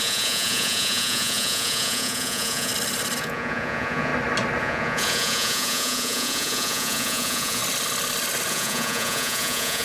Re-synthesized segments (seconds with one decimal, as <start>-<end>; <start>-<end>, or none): 0.0-2.7; 3.2-4.1; 4.6-7.6; 8.5-9.8

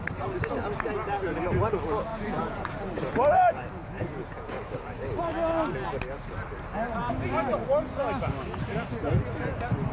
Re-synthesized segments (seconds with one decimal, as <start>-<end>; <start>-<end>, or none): 2.1-2.7; 3.8-4.6

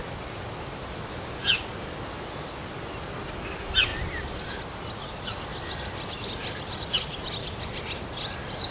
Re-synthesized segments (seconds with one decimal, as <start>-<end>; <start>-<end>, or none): none

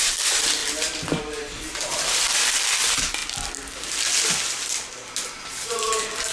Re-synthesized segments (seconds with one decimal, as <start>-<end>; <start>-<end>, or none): none

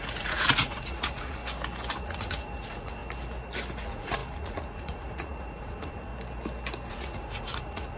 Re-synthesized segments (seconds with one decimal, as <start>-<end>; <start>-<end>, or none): 0.0-1.4; 2.0-3.0; 3.8-6.1; 6.9-8.0